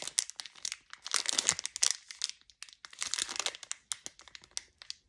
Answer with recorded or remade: recorded